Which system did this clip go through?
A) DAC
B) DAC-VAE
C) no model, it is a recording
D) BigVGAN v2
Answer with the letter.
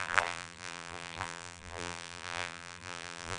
D